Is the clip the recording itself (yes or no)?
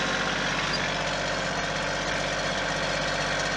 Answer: yes